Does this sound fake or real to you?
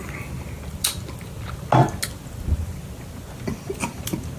real